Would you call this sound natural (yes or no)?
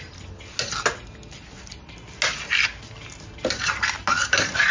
yes